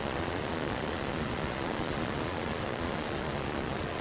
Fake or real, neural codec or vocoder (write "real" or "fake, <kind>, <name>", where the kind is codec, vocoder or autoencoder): fake, vocoder, Vocos